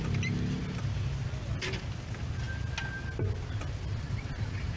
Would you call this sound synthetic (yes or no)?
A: no